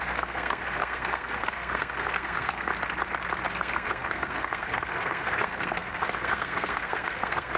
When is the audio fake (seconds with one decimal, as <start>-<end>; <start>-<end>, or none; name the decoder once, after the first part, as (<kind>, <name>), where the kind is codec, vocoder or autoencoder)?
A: 0.0-2.7 (codec, SNAC); 3.5-7.6